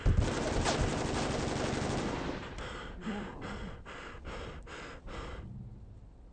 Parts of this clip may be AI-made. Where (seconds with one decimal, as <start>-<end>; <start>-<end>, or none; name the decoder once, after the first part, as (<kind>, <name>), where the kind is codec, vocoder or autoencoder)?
none